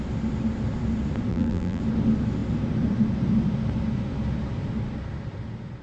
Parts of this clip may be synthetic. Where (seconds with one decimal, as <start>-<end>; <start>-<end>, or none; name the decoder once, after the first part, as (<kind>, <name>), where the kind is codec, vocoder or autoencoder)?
1.3-1.8 (vocoder, BigVGAN v2)